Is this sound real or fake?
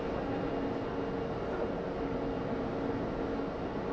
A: real